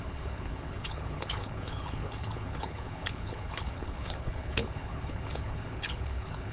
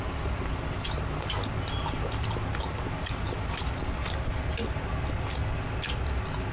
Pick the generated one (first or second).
first